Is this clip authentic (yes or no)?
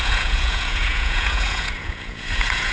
no